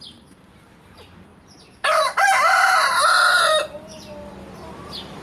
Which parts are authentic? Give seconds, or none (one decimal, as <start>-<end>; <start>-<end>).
none